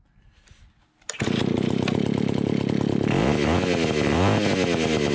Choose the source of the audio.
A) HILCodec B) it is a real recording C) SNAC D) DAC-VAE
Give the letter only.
B